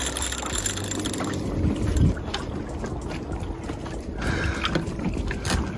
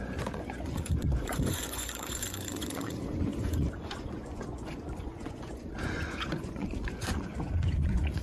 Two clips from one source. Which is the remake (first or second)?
second